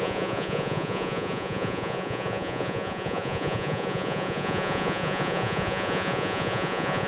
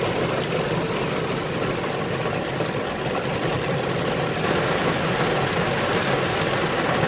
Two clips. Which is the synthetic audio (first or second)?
first